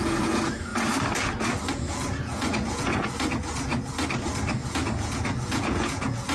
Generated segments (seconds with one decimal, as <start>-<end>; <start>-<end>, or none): 0.0-0.7; 1.7-3.7; 4.7-6.3